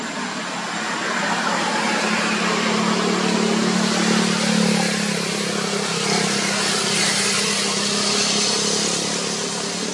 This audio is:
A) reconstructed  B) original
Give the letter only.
B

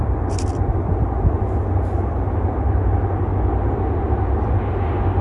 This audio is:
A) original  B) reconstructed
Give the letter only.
A